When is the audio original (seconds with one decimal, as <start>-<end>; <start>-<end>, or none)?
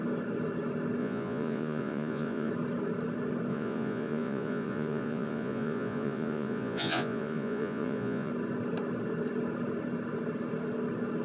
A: 0.0-1.0; 2.5-3.5; 8.3-11.2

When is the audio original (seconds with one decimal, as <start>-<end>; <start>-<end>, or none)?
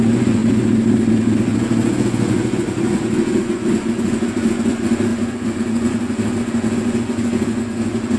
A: 0.4-1.1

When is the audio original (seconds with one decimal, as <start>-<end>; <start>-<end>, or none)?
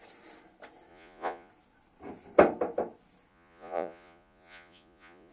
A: 0.0-0.9; 1.5-3.3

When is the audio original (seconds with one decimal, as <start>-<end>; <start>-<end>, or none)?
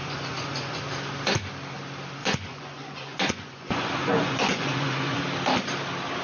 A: 0.8-2.2; 5.2-6.2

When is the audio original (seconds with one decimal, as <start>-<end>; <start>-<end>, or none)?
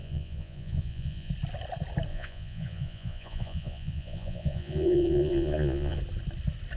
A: 1.3-2.1; 6.0-6.8